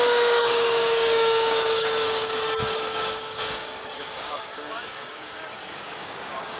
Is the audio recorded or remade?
remade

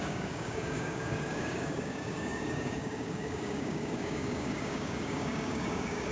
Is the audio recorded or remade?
remade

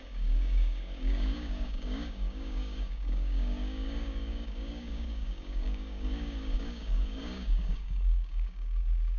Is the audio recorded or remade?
remade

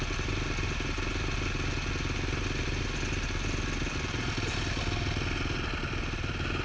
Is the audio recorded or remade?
recorded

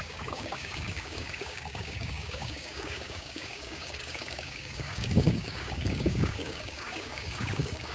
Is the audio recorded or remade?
remade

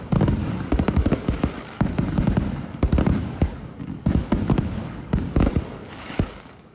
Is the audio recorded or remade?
remade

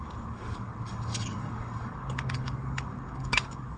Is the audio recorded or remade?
remade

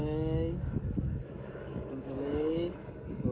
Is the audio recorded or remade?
remade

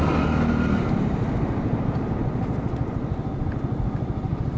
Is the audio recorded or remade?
recorded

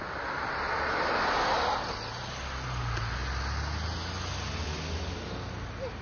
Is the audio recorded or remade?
recorded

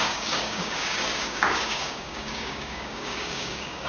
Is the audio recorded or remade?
remade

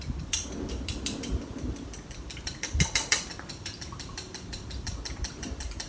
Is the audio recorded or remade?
recorded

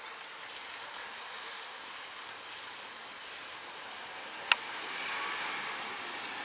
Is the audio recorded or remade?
recorded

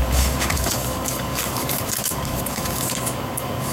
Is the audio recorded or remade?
remade